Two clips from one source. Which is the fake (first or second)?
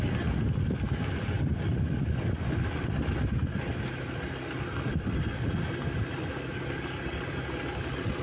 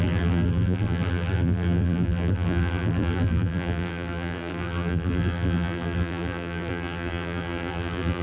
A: second